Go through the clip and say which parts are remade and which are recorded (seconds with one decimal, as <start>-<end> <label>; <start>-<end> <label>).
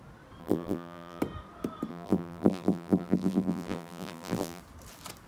0.0-0.4 recorded; 0.4-1.2 remade; 1.2-1.9 recorded; 1.9-4.6 remade; 4.6-5.3 recorded